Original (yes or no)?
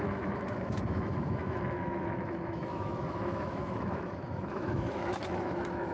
no